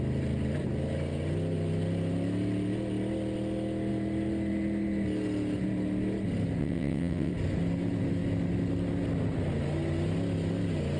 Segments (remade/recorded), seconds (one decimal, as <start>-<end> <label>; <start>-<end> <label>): 0.0-6.6 recorded; 6.6-7.3 remade; 7.3-11.0 recorded